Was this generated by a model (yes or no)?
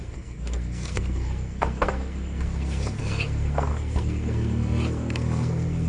yes